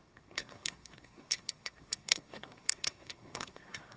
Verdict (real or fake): fake